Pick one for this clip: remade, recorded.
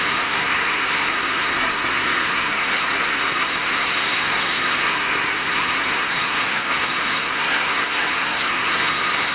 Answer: remade